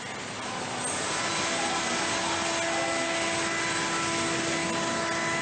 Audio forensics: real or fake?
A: real